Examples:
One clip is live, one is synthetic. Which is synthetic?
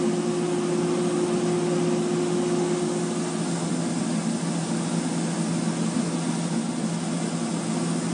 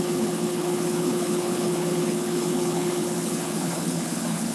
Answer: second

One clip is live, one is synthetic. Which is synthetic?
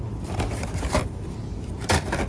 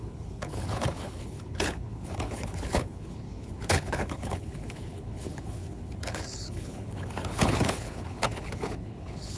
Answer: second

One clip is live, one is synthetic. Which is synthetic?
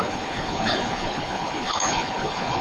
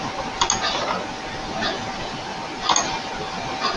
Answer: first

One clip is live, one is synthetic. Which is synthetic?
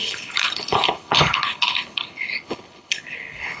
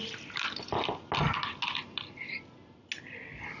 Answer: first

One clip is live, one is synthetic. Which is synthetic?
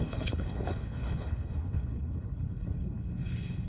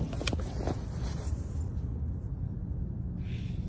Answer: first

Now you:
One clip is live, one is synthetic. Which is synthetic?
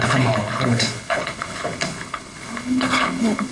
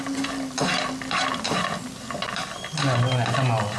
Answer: first